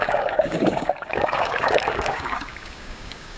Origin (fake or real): fake